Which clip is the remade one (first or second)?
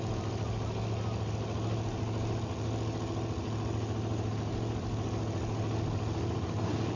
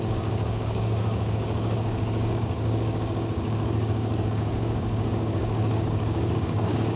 second